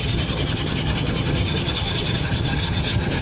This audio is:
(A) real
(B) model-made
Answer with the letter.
B